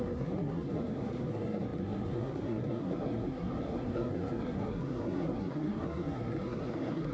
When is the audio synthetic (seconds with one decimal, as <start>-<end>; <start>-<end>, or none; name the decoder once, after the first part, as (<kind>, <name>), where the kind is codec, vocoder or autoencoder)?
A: 0.0-7.1 (codec, SNAC)